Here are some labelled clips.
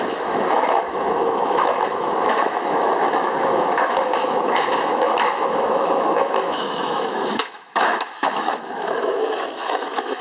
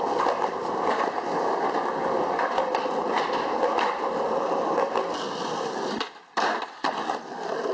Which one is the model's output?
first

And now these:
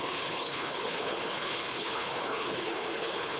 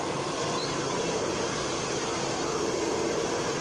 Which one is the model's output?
first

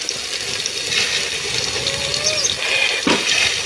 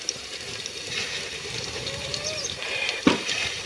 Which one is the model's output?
second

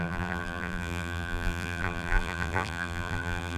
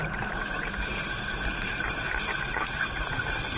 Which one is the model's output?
first